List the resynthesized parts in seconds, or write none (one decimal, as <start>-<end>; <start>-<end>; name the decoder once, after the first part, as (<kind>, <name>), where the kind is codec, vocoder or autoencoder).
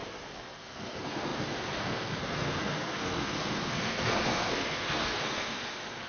0.0-6.1 (codec, SNAC)